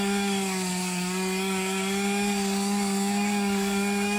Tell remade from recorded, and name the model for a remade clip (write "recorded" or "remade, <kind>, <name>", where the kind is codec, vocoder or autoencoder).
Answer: remade, codec, DAC